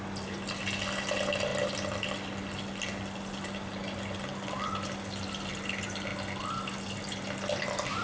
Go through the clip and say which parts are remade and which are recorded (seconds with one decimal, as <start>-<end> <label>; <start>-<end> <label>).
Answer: 0.0-6.1 remade; 6.1-7.0 recorded; 7.0-8.0 remade